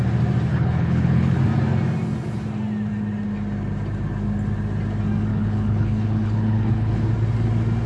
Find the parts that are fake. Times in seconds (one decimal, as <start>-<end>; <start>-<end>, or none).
0.5-1.4; 5.3-7.1